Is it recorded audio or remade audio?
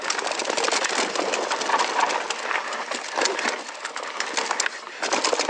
recorded